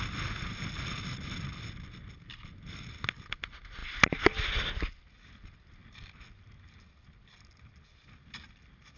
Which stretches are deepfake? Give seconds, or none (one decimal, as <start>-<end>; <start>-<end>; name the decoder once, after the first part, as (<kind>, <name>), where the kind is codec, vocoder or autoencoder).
none

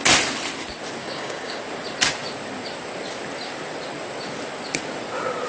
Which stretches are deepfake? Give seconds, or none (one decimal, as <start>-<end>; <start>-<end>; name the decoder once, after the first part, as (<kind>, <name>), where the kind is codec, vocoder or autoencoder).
1.0-1.6 (codec, DAC)

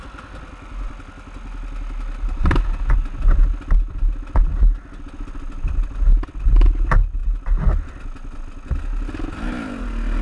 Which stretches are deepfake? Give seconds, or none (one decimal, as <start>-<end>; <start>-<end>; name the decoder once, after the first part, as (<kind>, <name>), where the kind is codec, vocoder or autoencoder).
none

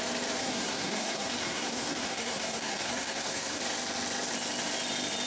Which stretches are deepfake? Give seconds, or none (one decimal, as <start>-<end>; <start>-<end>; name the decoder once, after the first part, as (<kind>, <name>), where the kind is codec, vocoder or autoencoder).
0.4-3.6 (codec, SNAC)

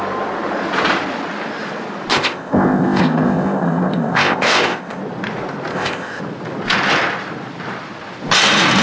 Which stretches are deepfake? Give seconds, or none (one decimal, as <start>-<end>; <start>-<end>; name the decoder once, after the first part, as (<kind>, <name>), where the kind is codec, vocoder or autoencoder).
2.1-5.0 (codec, ZipCodec); 5.7-6.2